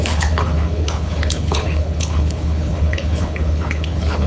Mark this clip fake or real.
fake